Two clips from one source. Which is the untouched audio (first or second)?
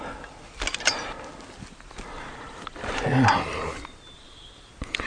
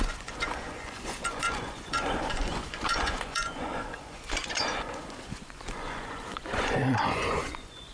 first